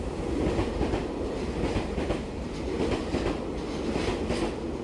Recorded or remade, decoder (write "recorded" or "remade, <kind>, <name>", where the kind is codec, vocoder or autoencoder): recorded